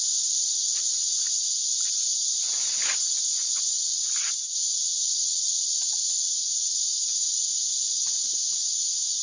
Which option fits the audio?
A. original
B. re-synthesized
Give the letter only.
A